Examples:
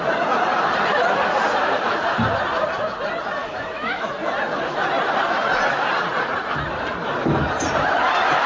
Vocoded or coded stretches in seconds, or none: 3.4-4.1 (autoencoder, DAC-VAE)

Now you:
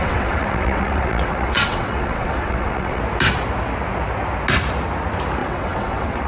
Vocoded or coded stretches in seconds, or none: 0.0-3.0 (vocoder, WaveNeXt); 5.4-6.3

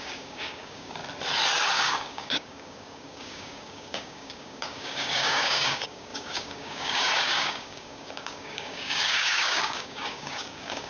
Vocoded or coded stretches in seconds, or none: 0.0-1.0 (codec, DAC); 1.7-10.9